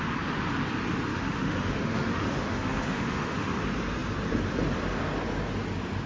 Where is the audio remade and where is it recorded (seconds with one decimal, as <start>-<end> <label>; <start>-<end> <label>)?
0.0-1.1 recorded; 1.1-3.6 remade; 3.6-6.1 recorded